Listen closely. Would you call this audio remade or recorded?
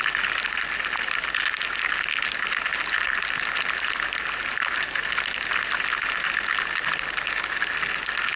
recorded